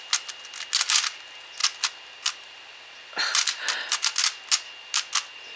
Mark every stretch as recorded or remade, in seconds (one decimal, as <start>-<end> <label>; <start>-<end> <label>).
0.0-5.6 recorded

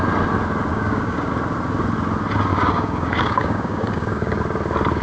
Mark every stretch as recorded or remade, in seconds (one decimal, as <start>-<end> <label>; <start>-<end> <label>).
0.0-0.7 recorded; 0.7-1.3 remade; 1.3-2.5 recorded; 2.5-4.4 remade; 4.4-5.0 recorded